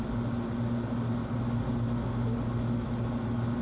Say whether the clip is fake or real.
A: real